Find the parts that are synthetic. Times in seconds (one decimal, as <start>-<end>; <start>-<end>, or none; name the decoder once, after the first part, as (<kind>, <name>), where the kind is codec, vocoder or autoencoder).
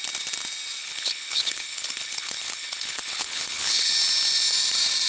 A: 0.8-3.9 (codec, HILCodec)